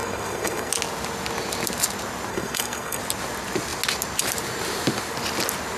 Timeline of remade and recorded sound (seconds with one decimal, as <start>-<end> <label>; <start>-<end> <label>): 0.0-0.7 remade; 0.7-2.3 recorded; 2.3-3.0 remade; 3.0-5.8 recorded